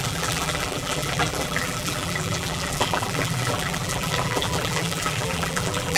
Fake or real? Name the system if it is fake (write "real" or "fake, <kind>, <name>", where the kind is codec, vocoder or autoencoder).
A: fake, vocoder, BigVGAN v2